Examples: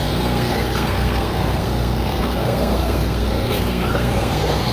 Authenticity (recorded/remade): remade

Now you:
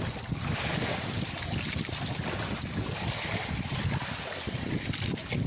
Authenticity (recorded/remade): recorded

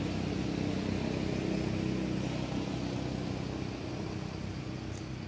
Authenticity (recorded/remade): recorded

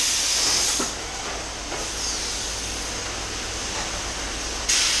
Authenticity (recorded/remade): recorded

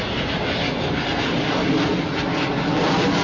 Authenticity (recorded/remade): recorded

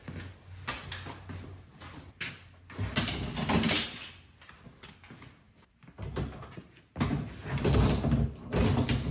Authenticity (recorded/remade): recorded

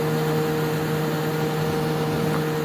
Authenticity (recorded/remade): recorded